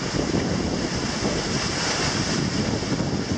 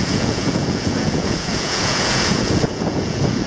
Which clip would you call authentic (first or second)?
first